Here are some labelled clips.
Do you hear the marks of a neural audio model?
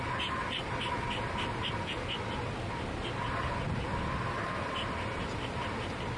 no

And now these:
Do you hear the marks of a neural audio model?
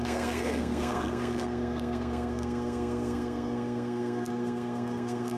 yes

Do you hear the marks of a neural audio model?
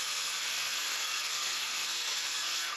yes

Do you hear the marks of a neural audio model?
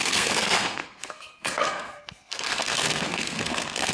yes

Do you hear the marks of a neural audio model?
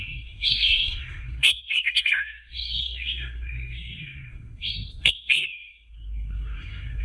yes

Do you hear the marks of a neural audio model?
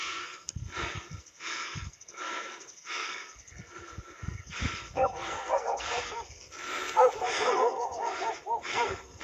yes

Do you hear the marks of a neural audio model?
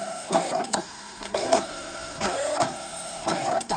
yes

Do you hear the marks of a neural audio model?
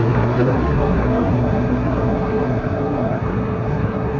yes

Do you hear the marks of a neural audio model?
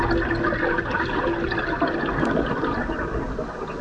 no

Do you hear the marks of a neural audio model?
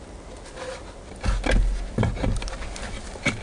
no